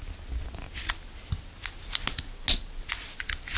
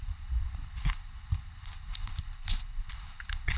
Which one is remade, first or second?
second